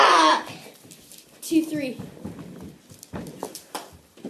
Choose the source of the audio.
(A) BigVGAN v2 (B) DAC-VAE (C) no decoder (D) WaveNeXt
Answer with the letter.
C